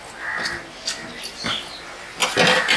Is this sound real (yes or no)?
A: yes